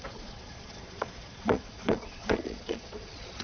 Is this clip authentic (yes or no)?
no